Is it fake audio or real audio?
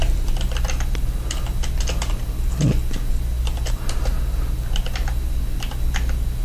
real